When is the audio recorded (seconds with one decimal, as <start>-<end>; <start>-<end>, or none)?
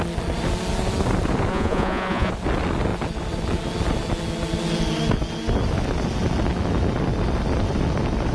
0.0-1.5; 2.3-8.3